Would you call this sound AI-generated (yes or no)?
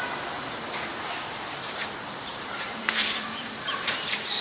yes